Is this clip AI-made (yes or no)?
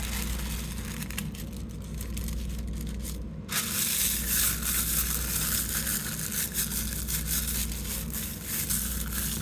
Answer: no